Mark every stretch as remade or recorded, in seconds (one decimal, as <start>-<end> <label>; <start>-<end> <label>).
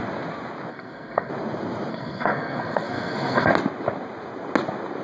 0.0-0.7 recorded; 0.7-1.3 remade; 1.3-1.9 recorded; 1.9-3.5 remade; 3.5-5.0 recorded